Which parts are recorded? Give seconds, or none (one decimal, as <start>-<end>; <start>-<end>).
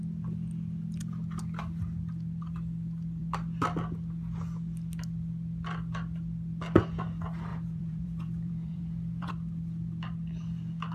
0.0-7.5; 9.3-10.9